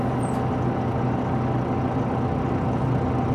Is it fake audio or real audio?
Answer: real